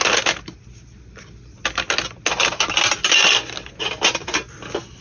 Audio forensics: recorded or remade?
recorded